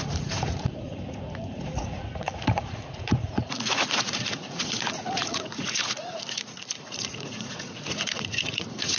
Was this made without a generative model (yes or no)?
no